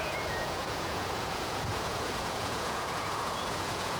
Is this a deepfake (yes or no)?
yes